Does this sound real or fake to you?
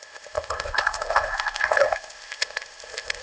fake